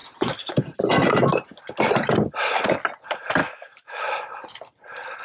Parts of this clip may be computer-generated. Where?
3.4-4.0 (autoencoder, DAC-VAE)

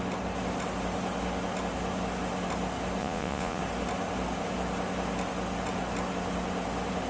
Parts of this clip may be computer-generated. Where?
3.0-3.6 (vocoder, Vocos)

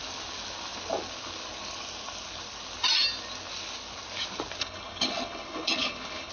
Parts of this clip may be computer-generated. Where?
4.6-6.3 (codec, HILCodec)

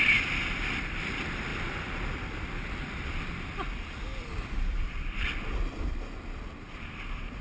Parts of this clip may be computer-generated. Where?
1.5-3.3 (vocoder, BigVGAN v2); 4.1-5.7